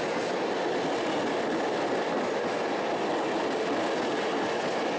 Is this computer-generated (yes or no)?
no